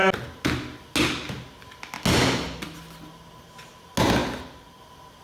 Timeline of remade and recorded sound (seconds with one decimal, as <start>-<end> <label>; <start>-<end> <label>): 0.0-4.2 recorded; 4.2-4.8 remade; 4.8-5.2 recorded